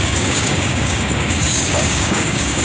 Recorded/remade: remade